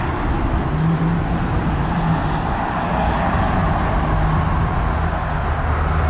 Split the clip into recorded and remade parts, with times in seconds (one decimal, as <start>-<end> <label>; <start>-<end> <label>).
0.0-6.1 recorded